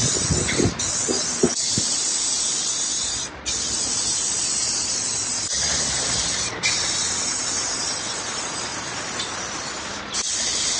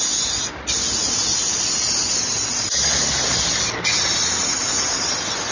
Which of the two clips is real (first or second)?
second